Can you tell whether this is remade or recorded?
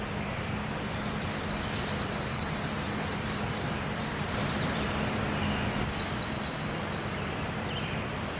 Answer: remade